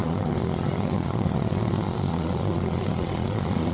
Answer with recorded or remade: remade